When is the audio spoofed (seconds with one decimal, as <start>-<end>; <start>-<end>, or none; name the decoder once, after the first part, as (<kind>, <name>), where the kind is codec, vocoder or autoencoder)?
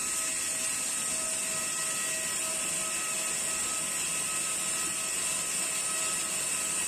none